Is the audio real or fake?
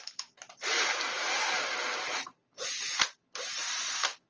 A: real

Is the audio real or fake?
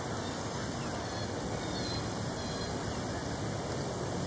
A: real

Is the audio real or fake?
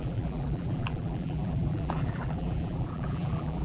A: fake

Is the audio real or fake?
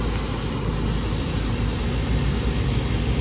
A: real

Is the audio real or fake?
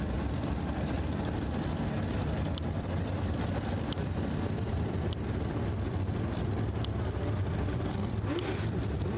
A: fake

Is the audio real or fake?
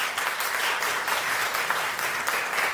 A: real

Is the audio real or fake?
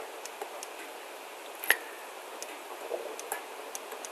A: real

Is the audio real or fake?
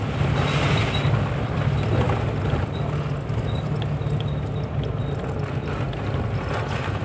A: real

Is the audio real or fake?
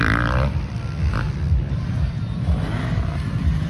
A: fake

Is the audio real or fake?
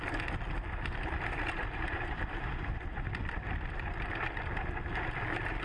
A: fake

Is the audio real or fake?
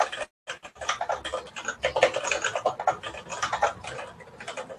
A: real